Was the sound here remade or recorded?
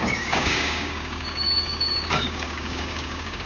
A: remade